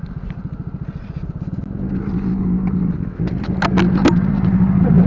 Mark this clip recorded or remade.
recorded